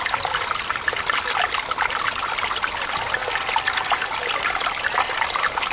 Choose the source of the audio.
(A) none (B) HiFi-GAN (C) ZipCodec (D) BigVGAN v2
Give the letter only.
A